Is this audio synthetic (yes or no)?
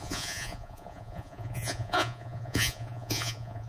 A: yes